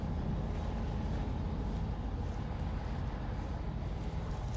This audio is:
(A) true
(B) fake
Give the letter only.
A